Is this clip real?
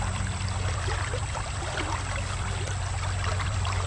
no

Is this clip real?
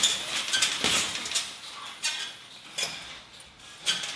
yes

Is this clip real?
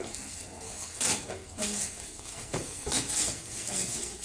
no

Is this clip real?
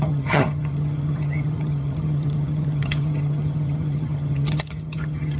no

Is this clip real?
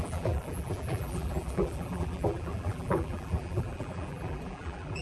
no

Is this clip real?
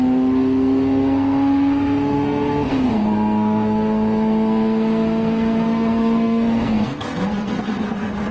no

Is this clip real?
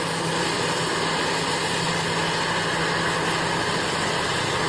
yes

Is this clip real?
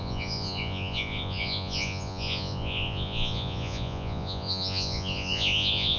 no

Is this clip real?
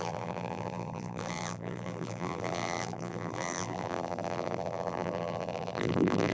no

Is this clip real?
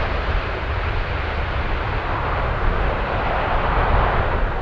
yes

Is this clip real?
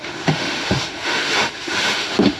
no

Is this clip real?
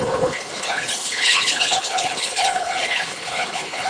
no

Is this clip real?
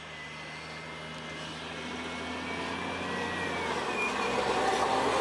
yes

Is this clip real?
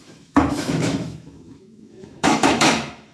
no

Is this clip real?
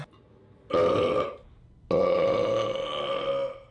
yes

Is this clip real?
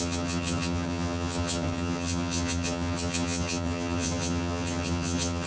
no